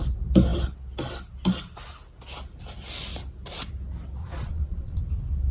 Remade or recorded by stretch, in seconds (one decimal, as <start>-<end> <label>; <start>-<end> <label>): 0.0-4.2 recorded; 4.2-5.0 remade; 5.0-5.5 recorded